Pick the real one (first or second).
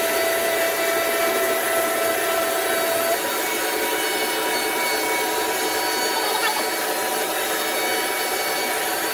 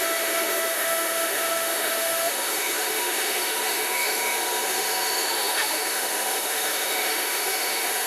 first